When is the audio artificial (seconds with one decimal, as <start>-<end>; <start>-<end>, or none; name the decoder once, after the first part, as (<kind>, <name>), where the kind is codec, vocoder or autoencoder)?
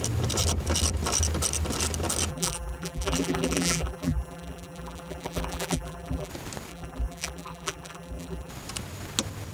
2.3-6.3 (vocoder, BigVGAN v2); 6.7-8.5